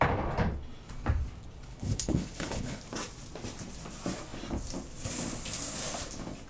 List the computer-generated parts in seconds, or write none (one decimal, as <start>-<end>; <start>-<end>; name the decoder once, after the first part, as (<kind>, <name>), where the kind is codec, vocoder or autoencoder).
1.7-2.8 (codec, HILCodec)